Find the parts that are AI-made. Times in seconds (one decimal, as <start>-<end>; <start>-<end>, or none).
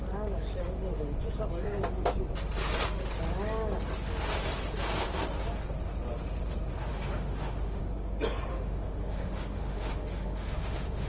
6.9-7.8; 8.5-11.1